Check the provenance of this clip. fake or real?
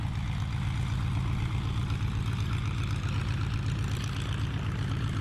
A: real